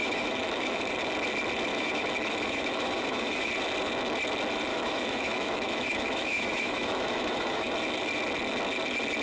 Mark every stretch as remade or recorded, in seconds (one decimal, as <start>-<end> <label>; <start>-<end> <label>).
0.0-0.9 remade; 0.9-1.7 recorded; 1.7-3.5 remade; 3.5-4.7 recorded; 4.7-7.7 remade; 7.7-9.2 recorded